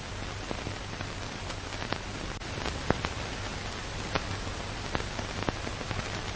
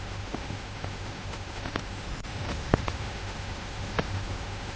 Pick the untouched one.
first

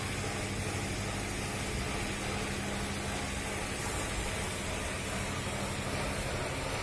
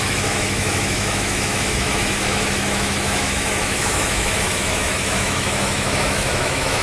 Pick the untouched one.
first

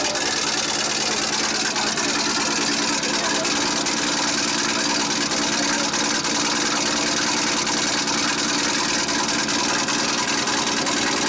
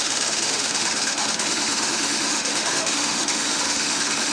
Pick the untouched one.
first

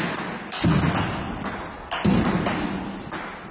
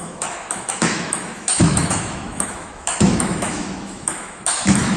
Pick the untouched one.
first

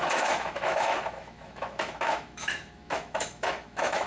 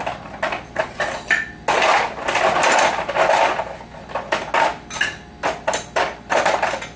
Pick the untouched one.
second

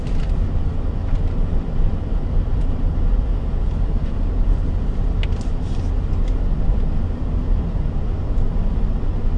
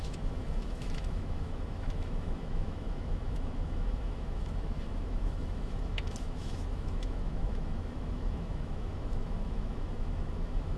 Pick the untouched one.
first